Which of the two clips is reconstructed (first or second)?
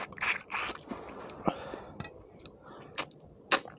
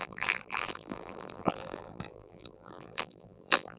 second